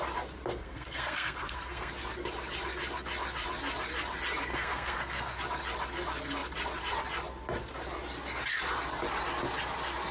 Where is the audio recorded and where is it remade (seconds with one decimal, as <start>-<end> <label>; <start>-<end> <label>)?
0.0-0.6 recorded; 0.6-1.9 remade; 1.9-4.5 recorded; 4.5-5.4 remade; 5.4-10.1 recorded